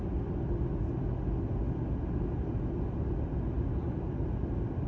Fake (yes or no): no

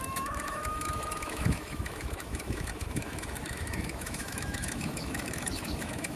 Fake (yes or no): yes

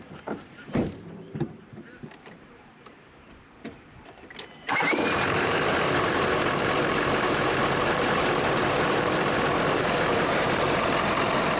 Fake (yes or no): yes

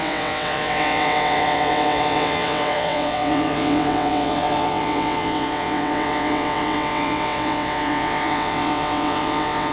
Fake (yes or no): yes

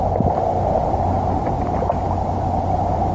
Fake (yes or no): no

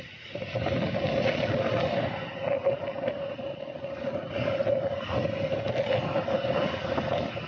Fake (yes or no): no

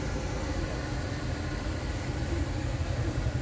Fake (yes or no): no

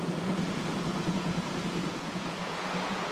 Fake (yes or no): yes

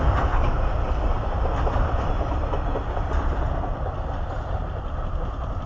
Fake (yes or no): no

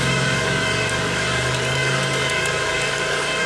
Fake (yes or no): yes